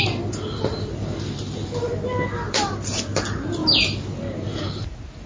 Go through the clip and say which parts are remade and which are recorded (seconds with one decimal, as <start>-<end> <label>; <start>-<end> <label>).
0.0-5.3 recorded